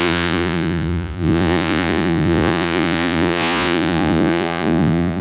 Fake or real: fake